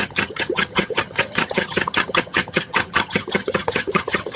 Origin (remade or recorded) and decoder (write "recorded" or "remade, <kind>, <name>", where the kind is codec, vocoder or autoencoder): remade, vocoder, HiFi-GAN